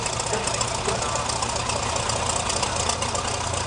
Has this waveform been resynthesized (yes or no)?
no